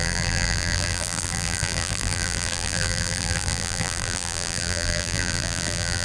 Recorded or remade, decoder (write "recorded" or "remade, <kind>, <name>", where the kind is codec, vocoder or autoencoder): remade, vocoder, BigVGAN v2